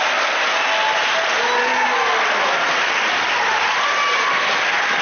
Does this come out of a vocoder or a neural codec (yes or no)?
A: no